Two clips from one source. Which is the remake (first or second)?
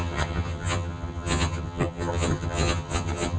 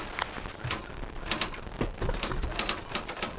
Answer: first